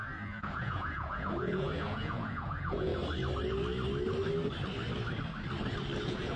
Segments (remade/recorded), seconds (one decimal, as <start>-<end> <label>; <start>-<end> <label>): 0.0-2.9 remade; 2.9-6.0 recorded; 6.0-6.4 remade